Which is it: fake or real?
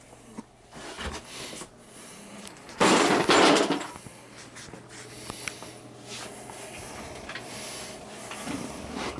real